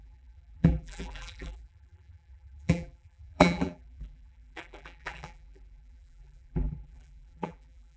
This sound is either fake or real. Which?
fake